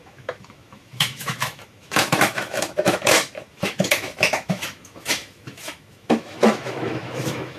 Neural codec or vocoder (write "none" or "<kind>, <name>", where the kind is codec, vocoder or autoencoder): autoencoder, DAC-VAE